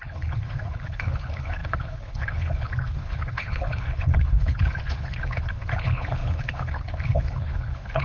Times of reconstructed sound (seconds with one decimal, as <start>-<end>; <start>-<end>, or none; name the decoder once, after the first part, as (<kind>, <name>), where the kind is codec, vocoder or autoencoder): 0.0-8.0 (codec, HILCodec)